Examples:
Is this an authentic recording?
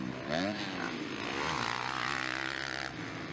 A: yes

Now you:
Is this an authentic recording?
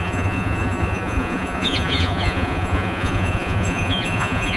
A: no